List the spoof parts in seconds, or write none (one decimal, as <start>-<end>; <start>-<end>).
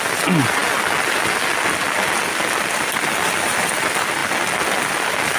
none